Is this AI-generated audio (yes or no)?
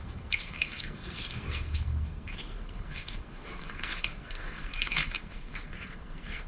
yes